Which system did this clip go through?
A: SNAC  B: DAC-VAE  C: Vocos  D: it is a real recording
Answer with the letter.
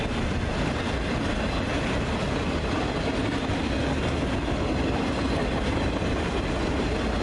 D